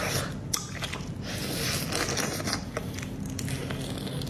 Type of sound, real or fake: real